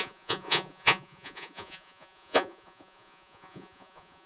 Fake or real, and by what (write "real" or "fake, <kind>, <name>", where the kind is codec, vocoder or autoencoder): fake, vocoder, Vocos